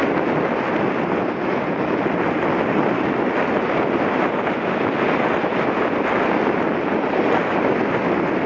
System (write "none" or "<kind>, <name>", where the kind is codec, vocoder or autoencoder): none